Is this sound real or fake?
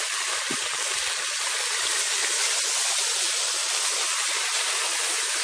real